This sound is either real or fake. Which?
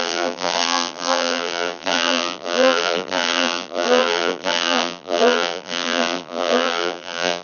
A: fake